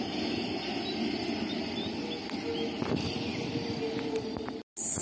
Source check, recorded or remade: recorded